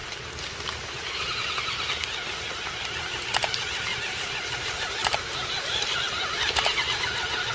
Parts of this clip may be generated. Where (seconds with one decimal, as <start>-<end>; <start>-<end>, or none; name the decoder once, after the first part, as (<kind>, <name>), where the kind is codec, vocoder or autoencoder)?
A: 3.9-7.5 (vocoder, BigVGAN v2)